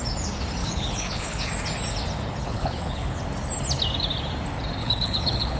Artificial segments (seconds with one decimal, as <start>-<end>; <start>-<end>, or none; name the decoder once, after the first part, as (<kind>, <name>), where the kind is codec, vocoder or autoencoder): 0.6-1.5 (codec, HILCodec); 2.4-3.2; 4.8-5.6

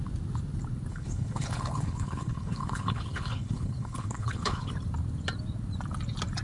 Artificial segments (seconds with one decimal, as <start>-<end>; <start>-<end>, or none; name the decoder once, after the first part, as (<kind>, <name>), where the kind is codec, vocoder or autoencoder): 0.9-4.7 (codec, HILCodec)

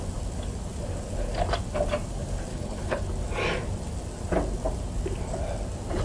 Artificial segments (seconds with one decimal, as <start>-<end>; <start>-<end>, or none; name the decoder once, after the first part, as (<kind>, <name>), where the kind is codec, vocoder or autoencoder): 2.5-3.0 (codec, HILCodec)